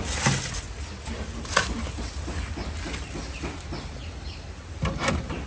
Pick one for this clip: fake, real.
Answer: real